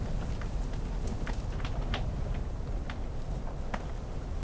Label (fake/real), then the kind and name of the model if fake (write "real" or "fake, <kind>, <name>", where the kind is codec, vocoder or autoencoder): real